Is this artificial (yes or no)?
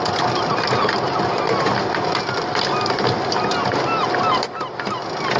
no